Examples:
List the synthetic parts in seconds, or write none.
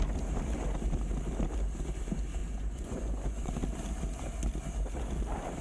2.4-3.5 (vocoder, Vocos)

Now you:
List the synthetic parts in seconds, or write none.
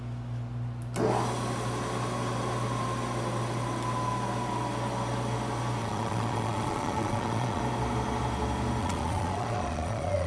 5.8-7.6 (vocoder, Vocos); 8.8-10.3